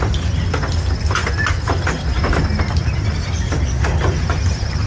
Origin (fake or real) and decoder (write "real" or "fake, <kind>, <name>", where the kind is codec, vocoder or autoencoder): real